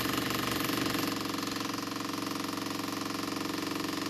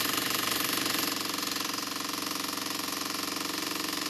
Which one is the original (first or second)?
first